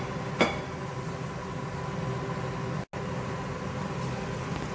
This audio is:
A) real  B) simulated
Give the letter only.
A